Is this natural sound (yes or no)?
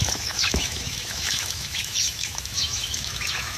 no